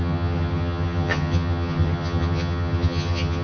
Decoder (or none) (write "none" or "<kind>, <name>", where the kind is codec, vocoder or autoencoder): vocoder, HiFi-GAN